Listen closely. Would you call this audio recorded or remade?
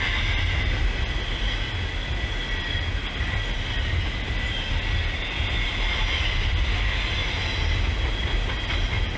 recorded